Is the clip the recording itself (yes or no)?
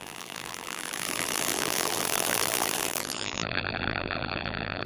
no